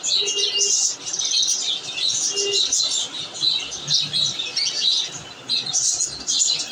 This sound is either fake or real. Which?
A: real